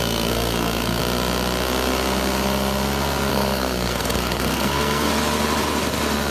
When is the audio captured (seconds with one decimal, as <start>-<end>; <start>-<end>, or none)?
1.0-3.3; 5.1-6.3